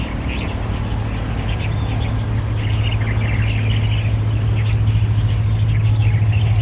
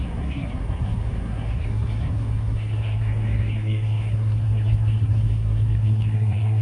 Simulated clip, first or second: second